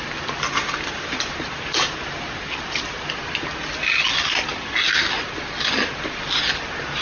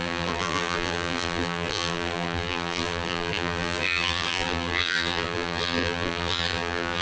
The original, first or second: first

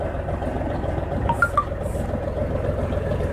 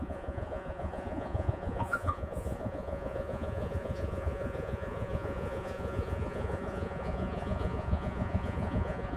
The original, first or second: first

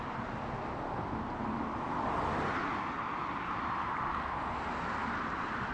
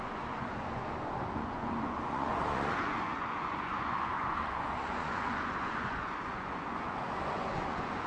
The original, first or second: first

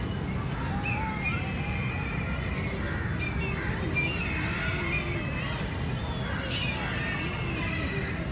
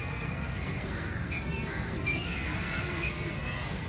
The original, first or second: first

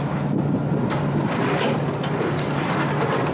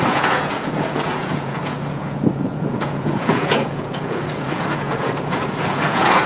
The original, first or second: first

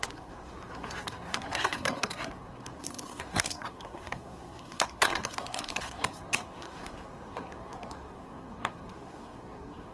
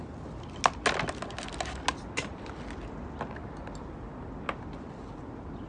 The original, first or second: second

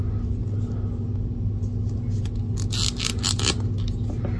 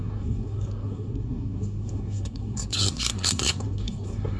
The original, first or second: first